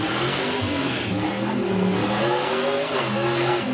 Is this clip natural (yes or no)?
no